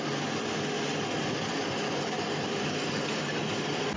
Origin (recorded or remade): recorded